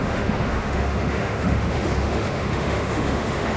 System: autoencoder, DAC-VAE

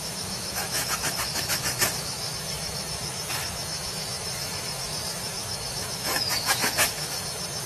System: autoencoder, DAC-VAE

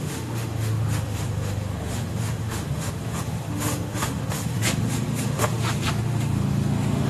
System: autoencoder, DAC-VAE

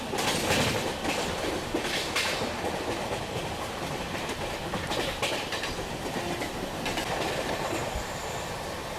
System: none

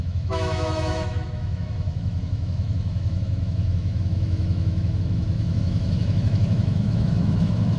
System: autoencoder, DAC-VAE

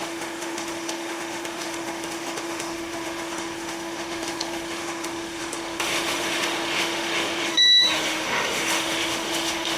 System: autoencoder, DAC-VAE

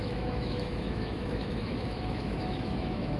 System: autoencoder, DAC-VAE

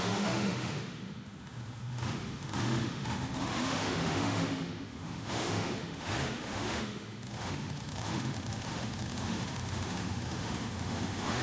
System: autoencoder, DAC-VAE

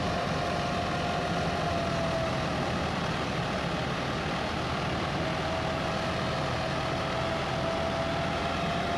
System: none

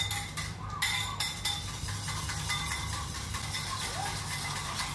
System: none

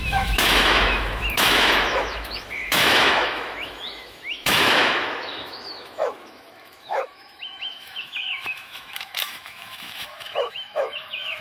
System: autoencoder, DAC-VAE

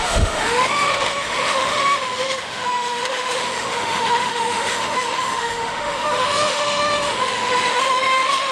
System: autoencoder, DAC-VAE